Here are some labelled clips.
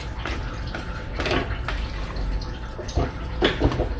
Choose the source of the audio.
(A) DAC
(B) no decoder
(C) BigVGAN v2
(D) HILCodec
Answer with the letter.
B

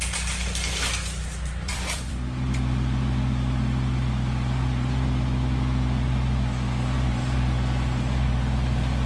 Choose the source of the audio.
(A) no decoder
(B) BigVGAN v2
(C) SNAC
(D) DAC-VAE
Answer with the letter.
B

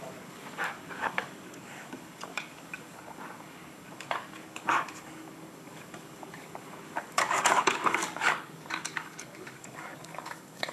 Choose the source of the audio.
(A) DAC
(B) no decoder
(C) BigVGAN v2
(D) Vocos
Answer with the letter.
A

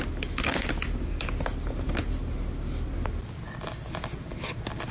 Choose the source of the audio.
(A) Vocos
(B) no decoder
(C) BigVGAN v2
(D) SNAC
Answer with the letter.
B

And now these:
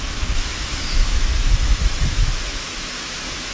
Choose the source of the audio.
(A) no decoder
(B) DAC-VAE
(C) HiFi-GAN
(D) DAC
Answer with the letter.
B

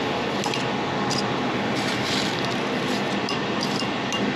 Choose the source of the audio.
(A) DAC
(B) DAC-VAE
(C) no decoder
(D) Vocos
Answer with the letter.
C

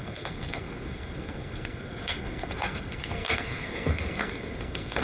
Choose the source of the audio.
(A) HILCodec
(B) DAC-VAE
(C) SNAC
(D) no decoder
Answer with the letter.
C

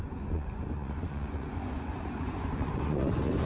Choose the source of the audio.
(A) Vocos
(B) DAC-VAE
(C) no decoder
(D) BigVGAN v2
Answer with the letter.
A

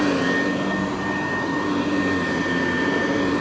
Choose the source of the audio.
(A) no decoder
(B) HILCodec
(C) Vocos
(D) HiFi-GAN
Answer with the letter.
A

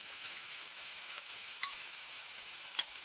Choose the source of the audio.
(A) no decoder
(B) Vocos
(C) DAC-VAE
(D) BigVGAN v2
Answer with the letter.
C